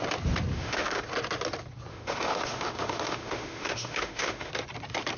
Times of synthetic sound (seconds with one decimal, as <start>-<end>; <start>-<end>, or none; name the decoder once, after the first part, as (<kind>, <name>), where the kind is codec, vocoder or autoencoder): 0.5-1.0 (autoencoder, DAC-VAE); 1.9-4.5